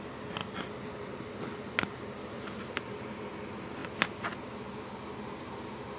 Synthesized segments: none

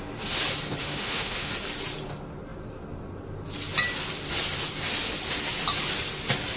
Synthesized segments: 0.8-1.5 (autoencoder, DAC-VAE)

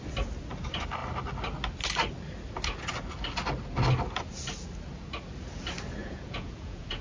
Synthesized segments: 6.0-7.0 (vocoder, Vocos)

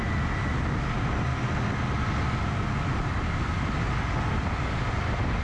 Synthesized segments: none

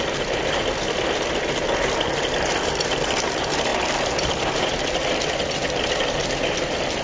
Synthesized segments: none

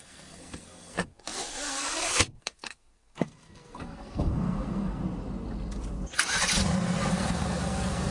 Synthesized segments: 0.0-5.0 (codec, SNAC); 7.1-8.1

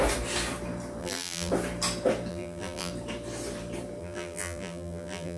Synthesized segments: 1.0-1.5 (vocoder, BigVGAN v2); 2.3-2.9; 4.0-5.4

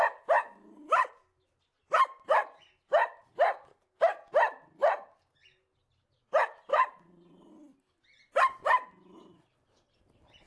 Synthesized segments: 6.7-7.5 (vocoder, Vocos)